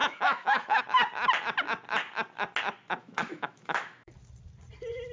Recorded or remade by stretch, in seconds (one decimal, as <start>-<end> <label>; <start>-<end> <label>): 0.0-0.8 remade; 0.8-3.0 recorded; 3.0-4.1 remade; 4.1-5.1 recorded